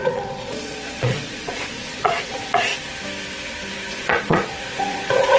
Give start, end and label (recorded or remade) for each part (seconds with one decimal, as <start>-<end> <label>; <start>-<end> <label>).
0.0-2.7 remade; 2.7-3.9 recorded; 3.9-5.4 remade